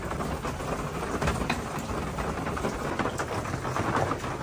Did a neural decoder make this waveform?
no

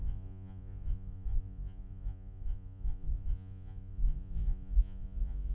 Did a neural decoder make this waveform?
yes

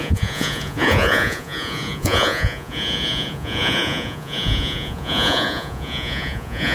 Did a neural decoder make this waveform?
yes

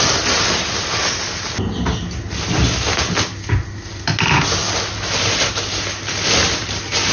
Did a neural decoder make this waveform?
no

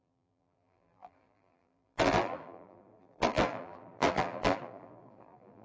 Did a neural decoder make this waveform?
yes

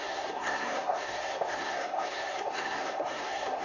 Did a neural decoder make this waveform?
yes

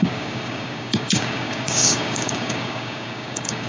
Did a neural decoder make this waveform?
yes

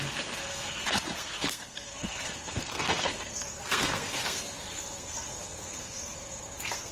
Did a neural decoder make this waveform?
yes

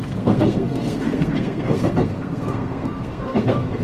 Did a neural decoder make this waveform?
yes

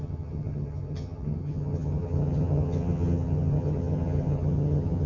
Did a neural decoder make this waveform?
yes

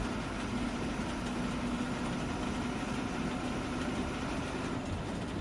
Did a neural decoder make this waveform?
no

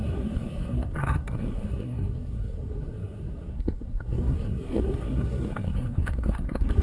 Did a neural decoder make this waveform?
yes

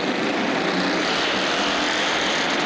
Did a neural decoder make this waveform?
no